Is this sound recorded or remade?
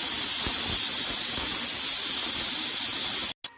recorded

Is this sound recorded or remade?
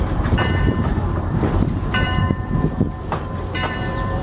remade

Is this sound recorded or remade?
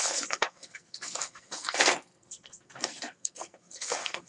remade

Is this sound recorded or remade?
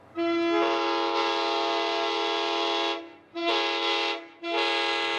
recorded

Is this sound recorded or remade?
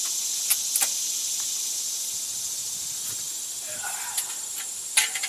recorded